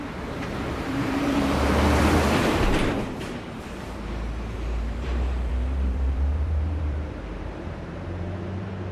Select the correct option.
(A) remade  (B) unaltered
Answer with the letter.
A